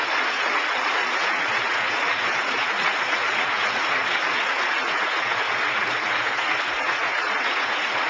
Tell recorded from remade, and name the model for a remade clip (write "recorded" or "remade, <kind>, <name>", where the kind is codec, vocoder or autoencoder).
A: remade, vocoder, Vocos